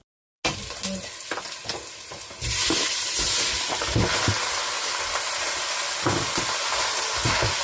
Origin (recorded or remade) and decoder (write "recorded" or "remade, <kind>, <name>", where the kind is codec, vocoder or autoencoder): recorded